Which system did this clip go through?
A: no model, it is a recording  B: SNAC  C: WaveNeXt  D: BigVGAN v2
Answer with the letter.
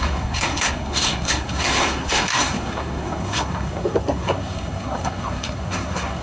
B